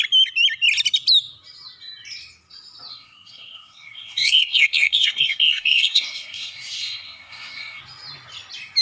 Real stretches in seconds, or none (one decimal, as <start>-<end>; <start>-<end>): 0.0-2.9; 7.8-8.8